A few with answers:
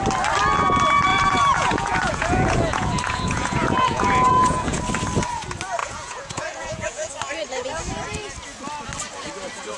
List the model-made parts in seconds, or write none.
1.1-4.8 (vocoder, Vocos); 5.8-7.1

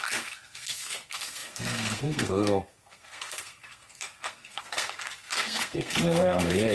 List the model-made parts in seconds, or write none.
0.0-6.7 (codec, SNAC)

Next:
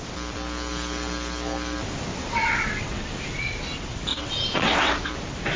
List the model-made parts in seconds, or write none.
2.1-3.2 (vocoder, WaveNeXt); 4.1-5.1

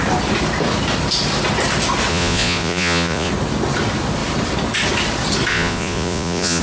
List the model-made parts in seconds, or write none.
2.1-3.3 (vocoder, Vocos); 5.5-6.6

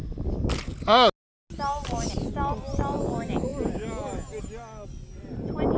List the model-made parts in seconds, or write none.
none

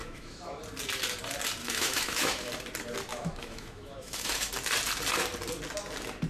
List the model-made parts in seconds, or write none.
0.0-0.6 (autoencoder, DAC-VAE); 1.6-2.5; 3.1-4.5

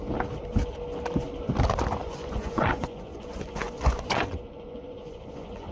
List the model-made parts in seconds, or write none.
2.0-5.7 (vocoder, Vocos)